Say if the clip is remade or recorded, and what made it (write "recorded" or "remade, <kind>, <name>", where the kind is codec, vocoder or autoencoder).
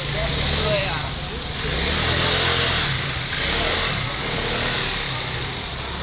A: recorded